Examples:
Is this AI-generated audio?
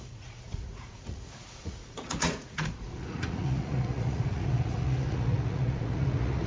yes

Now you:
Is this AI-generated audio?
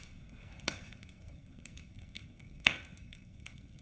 yes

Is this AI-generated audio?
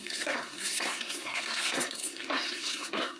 yes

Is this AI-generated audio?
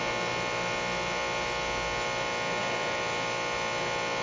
no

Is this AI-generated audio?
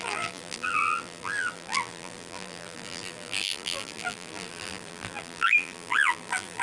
yes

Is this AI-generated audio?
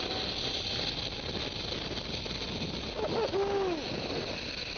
no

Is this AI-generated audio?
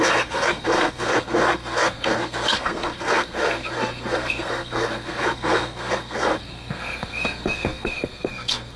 yes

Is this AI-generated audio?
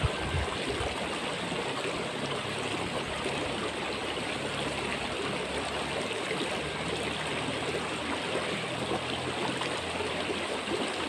no